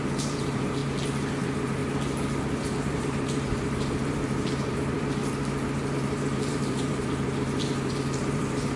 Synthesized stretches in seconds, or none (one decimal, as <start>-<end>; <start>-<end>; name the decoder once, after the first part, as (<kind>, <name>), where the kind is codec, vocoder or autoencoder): 0.0-0.8 (vocoder, BigVGAN v2); 1.4-1.8; 2.6-5.2; 5.9-8.8

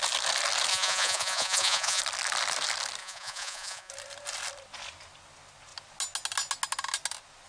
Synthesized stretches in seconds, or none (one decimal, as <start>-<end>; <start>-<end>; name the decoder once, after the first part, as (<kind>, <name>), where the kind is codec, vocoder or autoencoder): 0.7-2.0 (vocoder, Vocos); 3.0-3.9

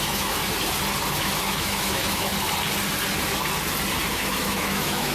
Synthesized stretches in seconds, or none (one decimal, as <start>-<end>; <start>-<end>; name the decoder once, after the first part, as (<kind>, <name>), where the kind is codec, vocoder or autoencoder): 0.0-0.4 (autoencoder, DAC-VAE); 1.1-2.3; 4.1-5.1

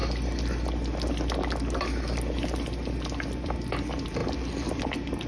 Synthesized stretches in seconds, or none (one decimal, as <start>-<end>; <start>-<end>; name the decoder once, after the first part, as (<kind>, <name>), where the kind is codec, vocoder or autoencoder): none

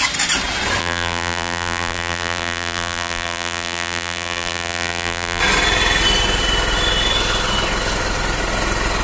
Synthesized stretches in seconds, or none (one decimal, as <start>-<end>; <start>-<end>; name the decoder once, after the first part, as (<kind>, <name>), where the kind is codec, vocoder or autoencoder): 0.8-5.4 (vocoder, BigVGAN v2)

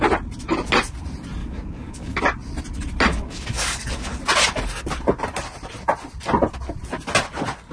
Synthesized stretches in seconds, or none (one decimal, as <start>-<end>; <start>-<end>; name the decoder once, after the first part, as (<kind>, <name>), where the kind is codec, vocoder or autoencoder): 1.4-2.2 (codec, DAC); 3.1-4.2

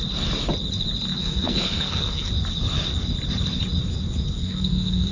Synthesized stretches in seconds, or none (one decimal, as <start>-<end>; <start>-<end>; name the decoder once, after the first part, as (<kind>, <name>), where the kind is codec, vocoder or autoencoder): 1.2-2.3 (codec, SNAC); 4.4-5.1